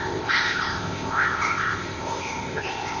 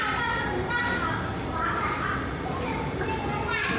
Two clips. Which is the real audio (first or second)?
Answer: second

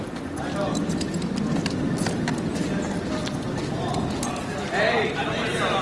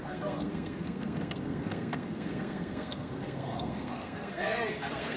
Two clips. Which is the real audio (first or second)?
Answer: first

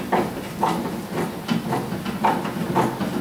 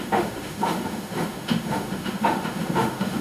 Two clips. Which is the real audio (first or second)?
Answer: first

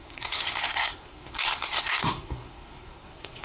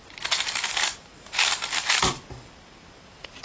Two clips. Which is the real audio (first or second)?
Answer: second